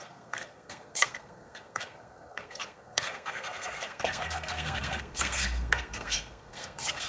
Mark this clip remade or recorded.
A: remade